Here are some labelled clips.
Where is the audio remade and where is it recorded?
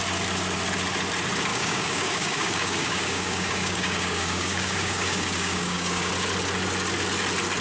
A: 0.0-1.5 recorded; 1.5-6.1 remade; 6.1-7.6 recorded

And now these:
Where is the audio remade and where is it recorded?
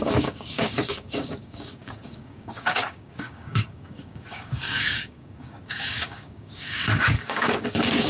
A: 0.0-8.1 remade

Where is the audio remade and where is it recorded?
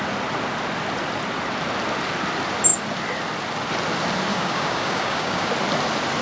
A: 0.0-4.3 recorded; 4.3-5.5 remade; 5.5-6.2 recorded